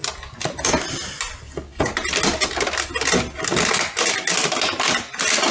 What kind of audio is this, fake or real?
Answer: real